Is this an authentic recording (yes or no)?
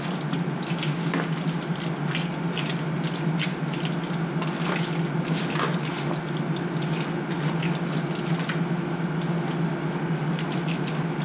yes